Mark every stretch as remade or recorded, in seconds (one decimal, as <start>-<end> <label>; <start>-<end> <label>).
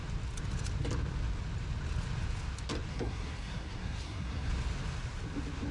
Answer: 0.0-2.9 recorded; 2.9-4.5 remade; 4.5-5.7 recorded